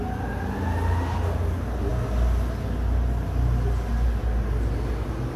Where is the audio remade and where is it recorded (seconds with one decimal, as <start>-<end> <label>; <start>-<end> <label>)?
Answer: 0.0-5.4 recorded